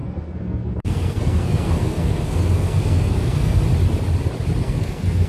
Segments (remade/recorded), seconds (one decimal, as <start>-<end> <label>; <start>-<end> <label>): 0.0-3.6 remade; 3.6-4.6 recorded; 4.6-5.3 remade